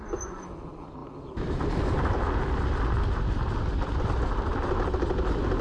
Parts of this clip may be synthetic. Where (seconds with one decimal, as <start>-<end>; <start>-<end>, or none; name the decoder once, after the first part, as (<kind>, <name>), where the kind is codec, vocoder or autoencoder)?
none